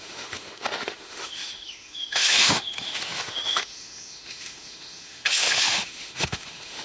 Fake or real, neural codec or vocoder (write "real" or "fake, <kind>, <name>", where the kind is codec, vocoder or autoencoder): fake, autoencoder, DAC-VAE